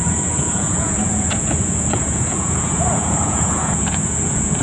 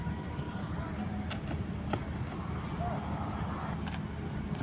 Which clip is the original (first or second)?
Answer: second